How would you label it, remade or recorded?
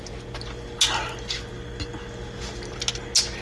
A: recorded